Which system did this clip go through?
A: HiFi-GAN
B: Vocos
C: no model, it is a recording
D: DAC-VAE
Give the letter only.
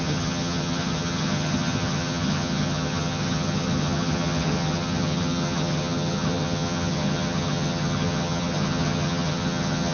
A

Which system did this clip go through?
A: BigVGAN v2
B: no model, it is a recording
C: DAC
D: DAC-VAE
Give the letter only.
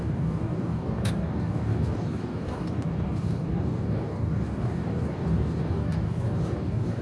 C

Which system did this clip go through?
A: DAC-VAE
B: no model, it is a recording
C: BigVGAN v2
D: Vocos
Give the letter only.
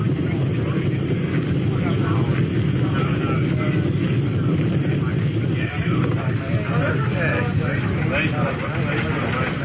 B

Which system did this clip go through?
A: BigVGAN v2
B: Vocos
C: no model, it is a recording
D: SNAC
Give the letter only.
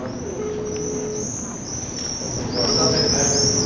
C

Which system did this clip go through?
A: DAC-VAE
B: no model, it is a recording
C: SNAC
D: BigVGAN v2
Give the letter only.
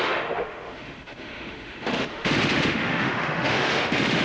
A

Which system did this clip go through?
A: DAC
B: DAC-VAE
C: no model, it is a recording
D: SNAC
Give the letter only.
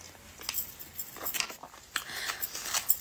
C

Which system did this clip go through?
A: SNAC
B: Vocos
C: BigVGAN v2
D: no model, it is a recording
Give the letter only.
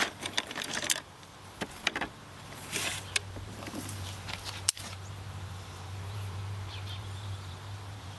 C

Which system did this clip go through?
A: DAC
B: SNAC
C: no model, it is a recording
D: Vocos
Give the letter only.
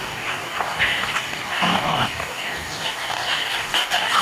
A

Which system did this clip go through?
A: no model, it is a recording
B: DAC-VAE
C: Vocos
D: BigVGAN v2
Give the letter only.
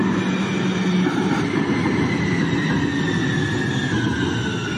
A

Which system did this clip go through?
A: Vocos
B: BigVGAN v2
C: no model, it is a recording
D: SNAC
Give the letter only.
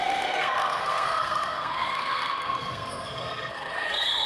D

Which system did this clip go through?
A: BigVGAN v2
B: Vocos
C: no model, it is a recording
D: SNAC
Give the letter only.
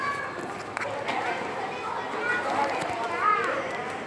C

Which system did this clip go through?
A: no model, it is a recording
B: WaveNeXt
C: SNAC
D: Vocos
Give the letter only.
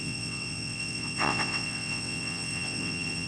B